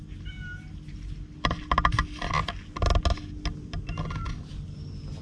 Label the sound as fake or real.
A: real